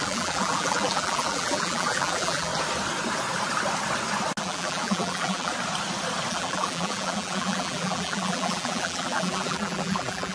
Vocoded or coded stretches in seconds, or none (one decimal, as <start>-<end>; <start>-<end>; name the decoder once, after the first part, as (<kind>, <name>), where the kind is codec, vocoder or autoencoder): 0.0-2.5 (vocoder, BigVGAN v2); 4.4-5.5; 6.3-10.3

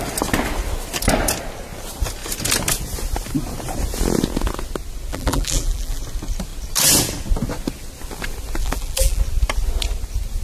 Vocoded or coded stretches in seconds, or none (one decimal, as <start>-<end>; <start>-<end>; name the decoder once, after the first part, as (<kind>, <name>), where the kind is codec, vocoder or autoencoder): 5.1-6.0 (vocoder, BigVGAN v2); 8.6-9.2

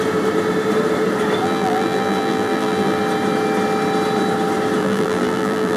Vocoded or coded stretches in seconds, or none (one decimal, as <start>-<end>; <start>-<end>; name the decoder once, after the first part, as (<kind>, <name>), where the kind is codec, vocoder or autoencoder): 1.4-3.0 (vocoder, BigVGAN v2); 4.8-5.8

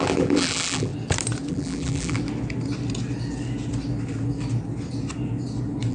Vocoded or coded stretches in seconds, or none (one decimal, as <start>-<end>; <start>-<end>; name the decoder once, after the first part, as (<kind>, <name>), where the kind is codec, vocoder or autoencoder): 0.0-0.9 (vocoder, BigVGAN v2); 1.5-2.2

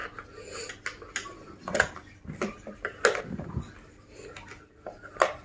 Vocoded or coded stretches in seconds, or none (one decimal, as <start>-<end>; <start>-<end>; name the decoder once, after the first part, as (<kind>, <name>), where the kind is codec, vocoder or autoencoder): none

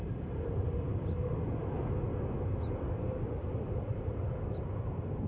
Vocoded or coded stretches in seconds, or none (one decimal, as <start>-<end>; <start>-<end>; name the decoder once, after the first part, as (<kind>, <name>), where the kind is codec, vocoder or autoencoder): none